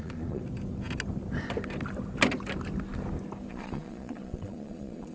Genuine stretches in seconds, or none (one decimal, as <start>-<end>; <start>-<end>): 0.4-3.5